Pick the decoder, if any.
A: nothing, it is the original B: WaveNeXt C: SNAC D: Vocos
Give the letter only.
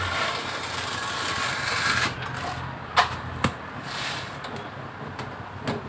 A